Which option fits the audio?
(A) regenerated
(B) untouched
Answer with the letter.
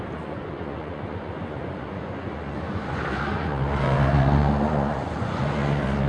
A